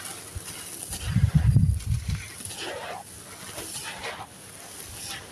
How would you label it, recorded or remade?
recorded